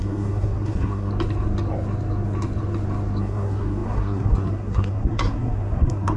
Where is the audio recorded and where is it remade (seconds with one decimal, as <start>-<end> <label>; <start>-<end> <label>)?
0.0-1.1 remade; 1.1-3.2 recorded; 3.2-6.2 remade